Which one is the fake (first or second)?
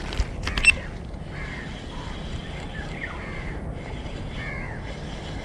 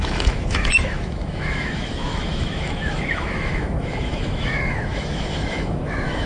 second